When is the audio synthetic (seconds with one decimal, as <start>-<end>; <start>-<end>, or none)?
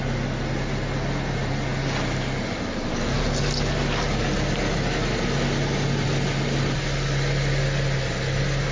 none